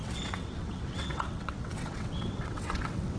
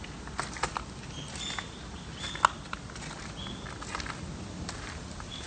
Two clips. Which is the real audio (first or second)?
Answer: second